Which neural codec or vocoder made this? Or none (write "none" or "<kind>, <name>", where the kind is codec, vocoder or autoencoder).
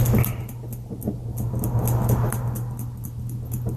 none